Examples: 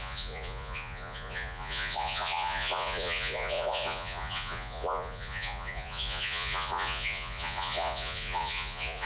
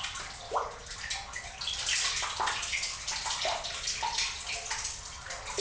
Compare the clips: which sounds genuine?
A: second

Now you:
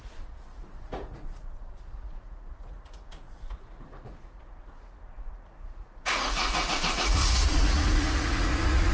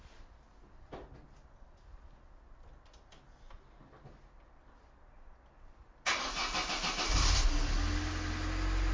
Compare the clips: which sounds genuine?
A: second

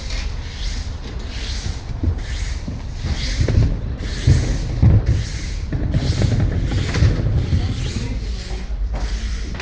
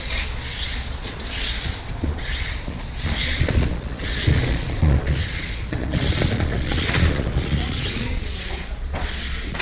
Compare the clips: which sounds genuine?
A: first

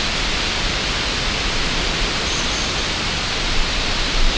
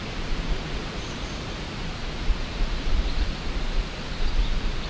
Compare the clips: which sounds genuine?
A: first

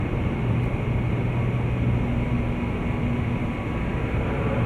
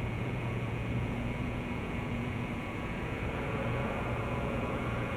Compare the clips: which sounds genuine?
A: first